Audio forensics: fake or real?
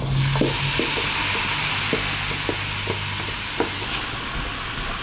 real